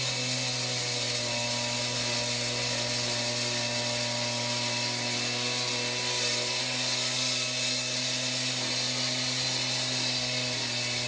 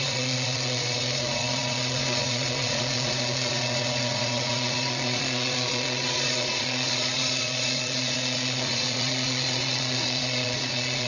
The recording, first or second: first